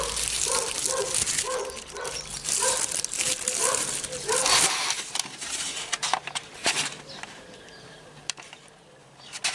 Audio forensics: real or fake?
fake